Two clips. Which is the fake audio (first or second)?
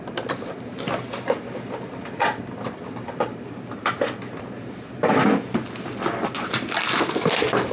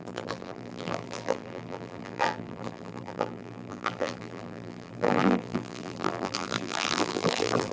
second